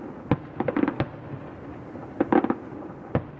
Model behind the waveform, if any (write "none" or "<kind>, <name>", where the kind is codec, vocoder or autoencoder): none